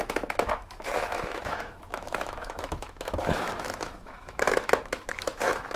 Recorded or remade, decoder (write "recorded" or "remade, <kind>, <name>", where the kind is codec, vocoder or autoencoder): remade, autoencoder, DAC-VAE